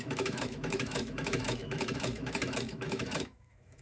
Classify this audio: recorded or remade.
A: remade